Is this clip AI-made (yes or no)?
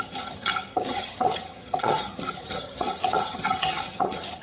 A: yes